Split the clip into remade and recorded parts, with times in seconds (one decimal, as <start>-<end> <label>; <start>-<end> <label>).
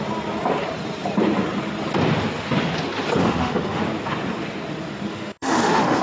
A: 0.0-3.2 recorded; 3.2-3.8 remade; 3.8-5.1 recorded; 5.1-6.0 remade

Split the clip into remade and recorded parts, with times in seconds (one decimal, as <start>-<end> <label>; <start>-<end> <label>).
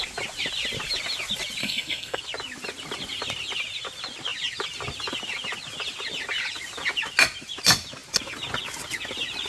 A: 0.0-1.6 recorded; 1.6-2.2 remade; 2.2-9.5 recorded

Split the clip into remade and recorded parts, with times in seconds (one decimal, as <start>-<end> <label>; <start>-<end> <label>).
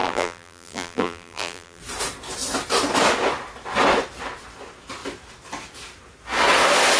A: 0.0-1.8 remade; 1.8-7.0 recorded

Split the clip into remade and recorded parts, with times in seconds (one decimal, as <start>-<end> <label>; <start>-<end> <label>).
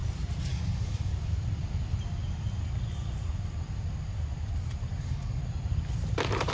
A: 0.0-0.5 recorded; 0.5-1.1 remade; 1.1-5.0 recorded; 5.0-5.4 remade; 5.4-6.5 recorded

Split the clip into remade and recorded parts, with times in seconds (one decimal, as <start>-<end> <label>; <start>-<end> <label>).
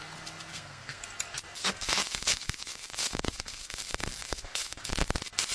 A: 0.0-0.5 recorded; 0.5-1.0 remade; 1.0-1.6 recorded; 1.6-4.9 remade; 4.9-5.5 recorded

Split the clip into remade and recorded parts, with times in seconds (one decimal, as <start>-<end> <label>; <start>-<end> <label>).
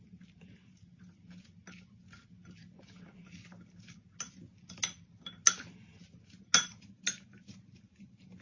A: 0.0-8.4 recorded